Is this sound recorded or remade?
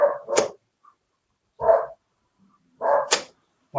remade